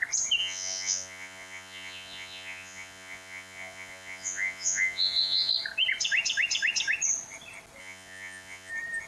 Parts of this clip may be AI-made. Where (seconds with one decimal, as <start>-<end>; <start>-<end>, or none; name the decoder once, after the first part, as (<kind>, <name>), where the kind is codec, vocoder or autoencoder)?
0.4-5.5 (vocoder, Vocos); 7.8-8.7